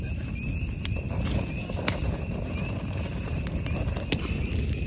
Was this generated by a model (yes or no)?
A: no